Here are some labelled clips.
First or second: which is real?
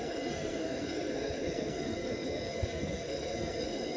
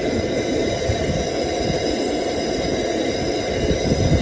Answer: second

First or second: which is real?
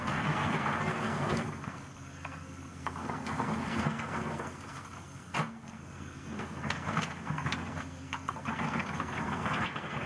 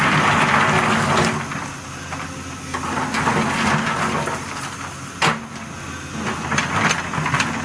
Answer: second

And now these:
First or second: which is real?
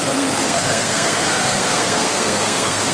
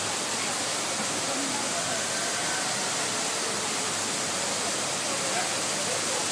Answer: second